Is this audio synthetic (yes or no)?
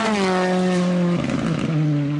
no